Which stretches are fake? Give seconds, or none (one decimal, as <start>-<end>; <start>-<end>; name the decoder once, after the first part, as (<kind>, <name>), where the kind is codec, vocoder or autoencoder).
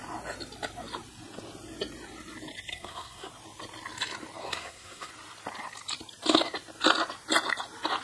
2.7-3.3 (codec, SNAC); 4.4-5.1